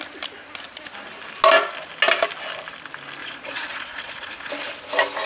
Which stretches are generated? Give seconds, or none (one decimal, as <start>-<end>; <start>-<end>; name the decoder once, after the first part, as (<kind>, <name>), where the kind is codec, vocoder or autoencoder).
3.2-4.5 (vocoder, Vocos)